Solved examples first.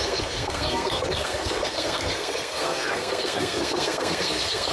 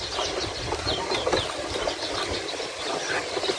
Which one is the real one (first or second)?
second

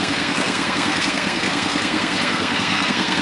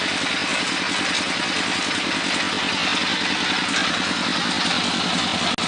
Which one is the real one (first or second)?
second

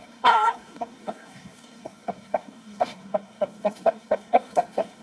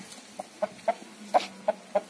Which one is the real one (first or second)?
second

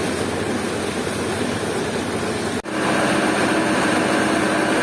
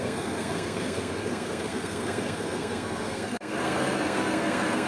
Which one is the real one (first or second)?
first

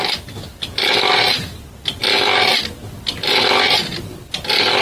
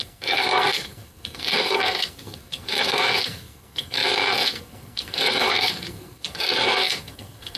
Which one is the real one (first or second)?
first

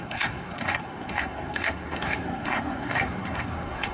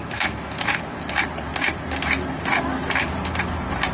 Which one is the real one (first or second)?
second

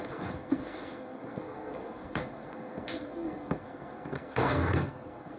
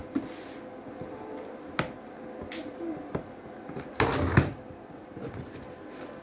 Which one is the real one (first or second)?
second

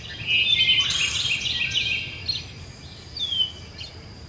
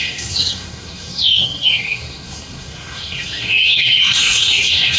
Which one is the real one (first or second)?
first